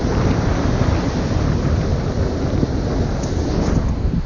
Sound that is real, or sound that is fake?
real